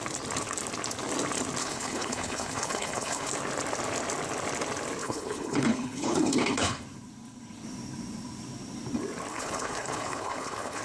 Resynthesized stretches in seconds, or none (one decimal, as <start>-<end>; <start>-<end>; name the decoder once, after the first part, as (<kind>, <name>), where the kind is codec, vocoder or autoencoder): 1.6-3.3 (codec, HILCodec); 5.0-6.8; 9.3-10.8